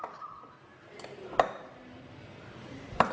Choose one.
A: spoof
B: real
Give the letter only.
B